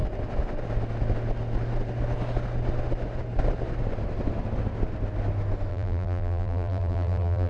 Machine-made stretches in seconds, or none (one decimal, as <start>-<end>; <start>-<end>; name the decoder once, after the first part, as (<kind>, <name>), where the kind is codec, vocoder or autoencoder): 5.7-7.5 (vocoder, BigVGAN v2)